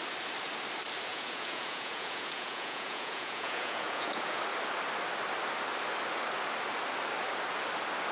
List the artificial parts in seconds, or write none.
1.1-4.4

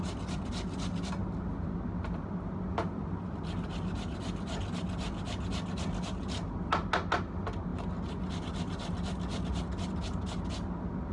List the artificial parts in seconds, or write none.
none